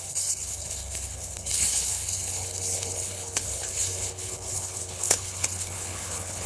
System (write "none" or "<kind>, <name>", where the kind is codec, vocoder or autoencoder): codec, HILCodec